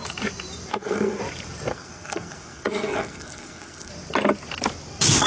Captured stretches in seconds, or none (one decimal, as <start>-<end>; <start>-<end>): 0.0-0.7; 1.2-1.7; 3.9-5.3